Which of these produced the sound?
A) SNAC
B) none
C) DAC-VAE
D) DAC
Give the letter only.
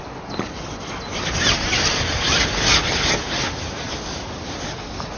B